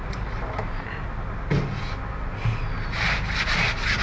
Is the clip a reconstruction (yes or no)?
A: no